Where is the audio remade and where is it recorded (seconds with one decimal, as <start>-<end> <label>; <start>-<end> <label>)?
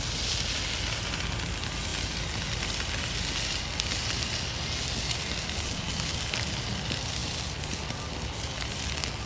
0.0-9.3 recorded